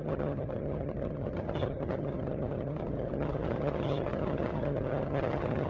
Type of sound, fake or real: fake